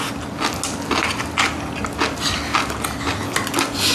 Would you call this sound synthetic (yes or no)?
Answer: no